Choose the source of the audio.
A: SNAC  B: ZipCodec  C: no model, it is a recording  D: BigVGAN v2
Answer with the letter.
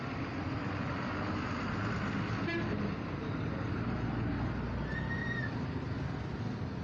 C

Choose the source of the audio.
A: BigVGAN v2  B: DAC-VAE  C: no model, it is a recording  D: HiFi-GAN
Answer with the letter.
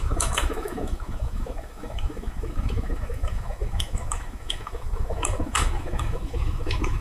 B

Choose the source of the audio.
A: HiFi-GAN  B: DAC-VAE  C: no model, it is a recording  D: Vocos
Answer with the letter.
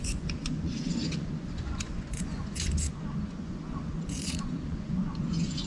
D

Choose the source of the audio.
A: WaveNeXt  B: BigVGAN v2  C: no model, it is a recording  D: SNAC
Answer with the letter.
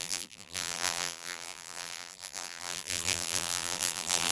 B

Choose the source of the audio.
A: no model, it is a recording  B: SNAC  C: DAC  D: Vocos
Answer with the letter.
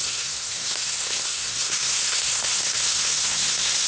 B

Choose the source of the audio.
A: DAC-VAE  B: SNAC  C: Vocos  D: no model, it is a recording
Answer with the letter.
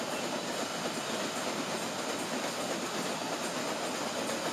D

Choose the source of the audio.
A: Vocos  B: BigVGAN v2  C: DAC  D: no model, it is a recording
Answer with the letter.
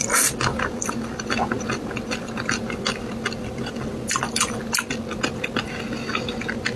D